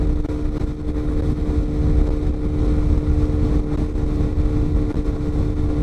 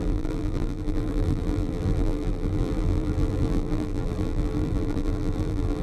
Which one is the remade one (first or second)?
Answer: second